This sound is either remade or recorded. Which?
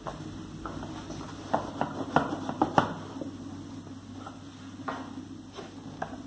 recorded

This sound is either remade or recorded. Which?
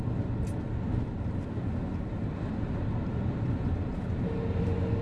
recorded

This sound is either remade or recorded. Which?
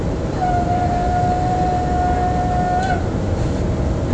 recorded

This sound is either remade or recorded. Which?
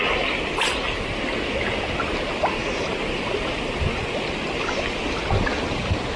recorded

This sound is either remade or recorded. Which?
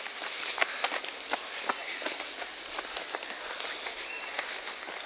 recorded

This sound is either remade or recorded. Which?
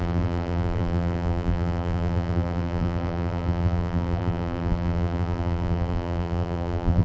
remade